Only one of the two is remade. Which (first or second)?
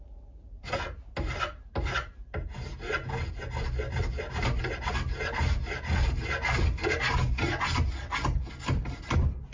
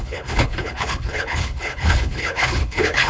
second